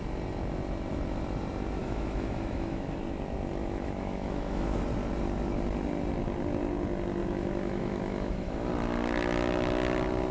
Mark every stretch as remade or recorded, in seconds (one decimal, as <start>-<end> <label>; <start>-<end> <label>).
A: 0.0-1.8 recorded; 1.8-3.0 remade; 3.0-3.6 recorded; 3.6-4.8 remade; 4.8-7.2 recorded; 7.2-8.7 remade; 8.7-10.3 recorded

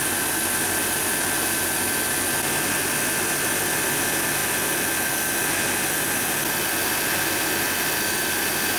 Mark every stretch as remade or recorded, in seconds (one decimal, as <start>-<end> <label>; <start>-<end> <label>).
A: 0.0-8.8 recorded